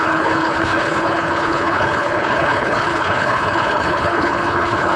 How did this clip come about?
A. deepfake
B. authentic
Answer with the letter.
A